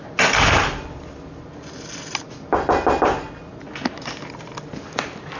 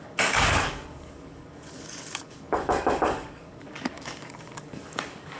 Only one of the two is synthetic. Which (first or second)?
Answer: second